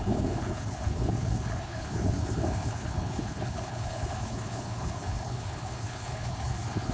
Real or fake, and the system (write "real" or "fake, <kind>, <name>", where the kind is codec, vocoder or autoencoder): fake, codec, HILCodec